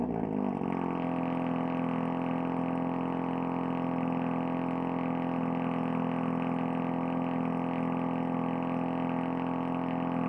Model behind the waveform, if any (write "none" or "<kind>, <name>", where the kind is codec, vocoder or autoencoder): none